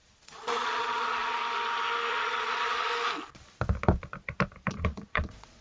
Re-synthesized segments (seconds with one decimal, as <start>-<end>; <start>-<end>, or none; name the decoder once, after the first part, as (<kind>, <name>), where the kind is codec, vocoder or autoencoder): 0.0-1.4 (vocoder, Vocos); 2.1-2.9; 4.7-5.6